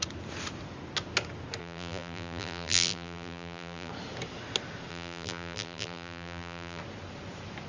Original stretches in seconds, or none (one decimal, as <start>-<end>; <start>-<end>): 0.0-1.6; 3.9-4.9; 6.8-7.7